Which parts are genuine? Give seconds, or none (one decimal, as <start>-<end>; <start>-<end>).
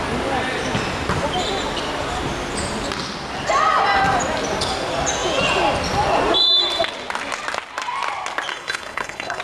0.0-8.5